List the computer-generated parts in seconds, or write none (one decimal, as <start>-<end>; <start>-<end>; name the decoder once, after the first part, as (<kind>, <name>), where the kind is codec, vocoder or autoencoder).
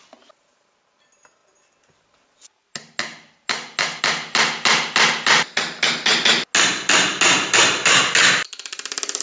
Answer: none